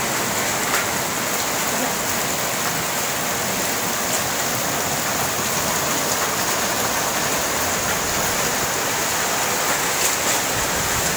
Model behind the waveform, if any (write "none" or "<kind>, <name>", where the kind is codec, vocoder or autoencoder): none